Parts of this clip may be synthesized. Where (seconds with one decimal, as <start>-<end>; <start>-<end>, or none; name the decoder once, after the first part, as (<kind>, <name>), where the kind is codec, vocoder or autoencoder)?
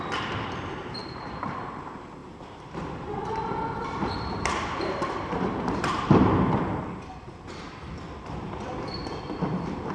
1.0-1.6 (vocoder, BigVGAN v2); 2.2-6.5